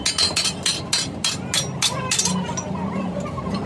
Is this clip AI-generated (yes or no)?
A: no